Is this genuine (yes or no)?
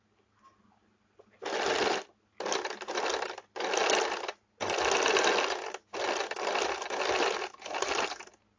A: yes